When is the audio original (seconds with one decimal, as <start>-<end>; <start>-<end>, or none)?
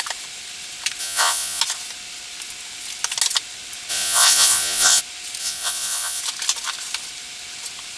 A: 0.0-1.0; 1.6-3.9; 5.0-5.4; 6.2-8.0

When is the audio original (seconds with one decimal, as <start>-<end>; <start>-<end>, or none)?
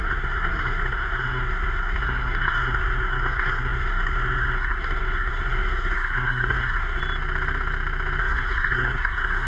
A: 7.0-8.2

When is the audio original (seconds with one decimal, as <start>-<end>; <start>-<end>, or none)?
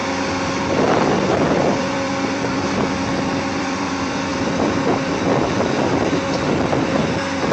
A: 0.0-0.6